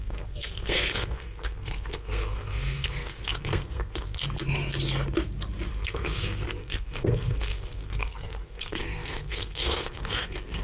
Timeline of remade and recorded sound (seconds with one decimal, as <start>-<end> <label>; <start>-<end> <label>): 0.0-4.2 remade; 4.2-5.7 recorded; 5.7-10.6 remade